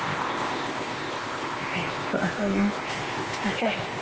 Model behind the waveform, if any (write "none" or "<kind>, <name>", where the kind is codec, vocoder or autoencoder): codec, ZipCodec